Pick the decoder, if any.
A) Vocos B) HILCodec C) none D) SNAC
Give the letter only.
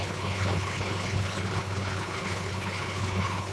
B